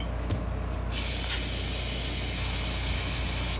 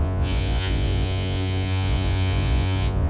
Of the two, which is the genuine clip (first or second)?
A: first